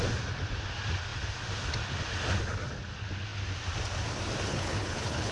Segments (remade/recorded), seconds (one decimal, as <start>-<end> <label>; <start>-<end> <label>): 0.0-4.5 recorded; 4.5-5.3 remade